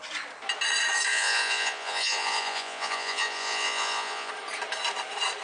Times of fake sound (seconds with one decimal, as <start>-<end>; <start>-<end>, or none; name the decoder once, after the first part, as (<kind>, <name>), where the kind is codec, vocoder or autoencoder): 1.1-4.3 (vocoder, Vocos)